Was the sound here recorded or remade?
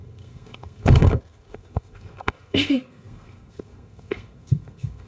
remade